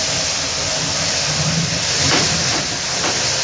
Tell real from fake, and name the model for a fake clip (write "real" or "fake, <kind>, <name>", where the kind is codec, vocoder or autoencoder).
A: real